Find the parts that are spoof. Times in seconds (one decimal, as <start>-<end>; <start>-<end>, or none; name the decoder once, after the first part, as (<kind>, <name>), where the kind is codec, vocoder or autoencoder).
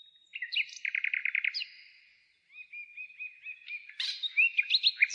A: none